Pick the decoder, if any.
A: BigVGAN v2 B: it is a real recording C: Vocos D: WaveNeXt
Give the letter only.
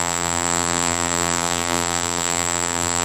A